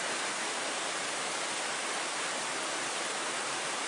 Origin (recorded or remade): recorded